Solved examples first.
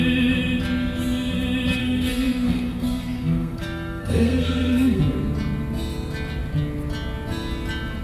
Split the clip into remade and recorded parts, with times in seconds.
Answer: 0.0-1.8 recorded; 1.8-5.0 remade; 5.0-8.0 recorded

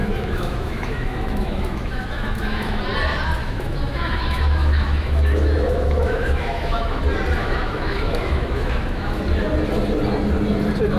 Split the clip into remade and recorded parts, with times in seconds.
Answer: 0.0-2.8 remade; 2.8-3.4 recorded; 3.4-7.0 remade; 7.0-7.4 recorded; 7.4-9.2 remade; 9.2-11.0 recorded

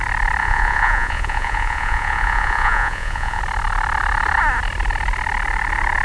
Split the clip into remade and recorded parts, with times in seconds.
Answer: 0.0-0.4 recorded; 0.4-3.4 remade; 3.4-6.0 recorded